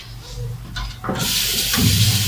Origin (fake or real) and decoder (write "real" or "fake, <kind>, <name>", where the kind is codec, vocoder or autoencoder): real